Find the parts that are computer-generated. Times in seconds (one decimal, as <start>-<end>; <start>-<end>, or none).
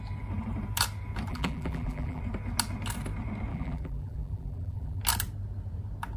1.3-2.2; 3.5-5.0